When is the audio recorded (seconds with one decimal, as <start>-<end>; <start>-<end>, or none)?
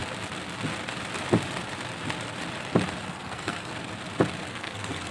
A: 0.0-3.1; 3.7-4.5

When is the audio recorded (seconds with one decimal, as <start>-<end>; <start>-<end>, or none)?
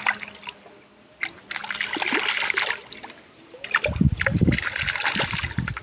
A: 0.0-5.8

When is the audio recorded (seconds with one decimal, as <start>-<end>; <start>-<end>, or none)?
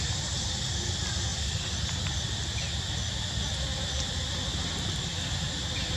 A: 0.0-6.0